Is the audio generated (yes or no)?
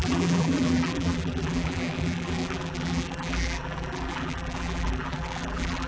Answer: yes